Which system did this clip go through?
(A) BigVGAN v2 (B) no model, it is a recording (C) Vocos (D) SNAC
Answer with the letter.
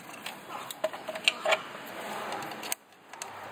B